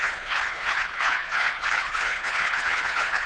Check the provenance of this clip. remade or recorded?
remade